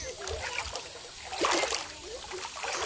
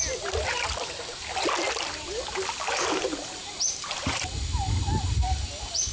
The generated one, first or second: first